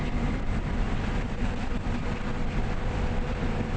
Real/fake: fake